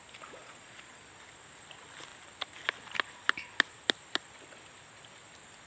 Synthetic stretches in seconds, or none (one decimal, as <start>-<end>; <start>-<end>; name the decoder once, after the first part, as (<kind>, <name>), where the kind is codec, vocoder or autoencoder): 0.4-1.1 (vocoder, Vocos)